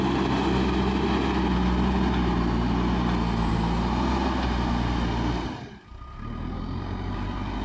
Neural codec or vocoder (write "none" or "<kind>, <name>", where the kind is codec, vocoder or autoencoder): none